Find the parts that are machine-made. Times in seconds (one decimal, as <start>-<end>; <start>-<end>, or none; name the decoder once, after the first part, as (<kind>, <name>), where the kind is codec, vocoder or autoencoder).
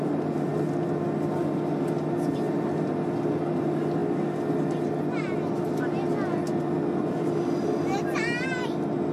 none